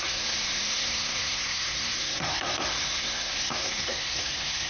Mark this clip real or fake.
fake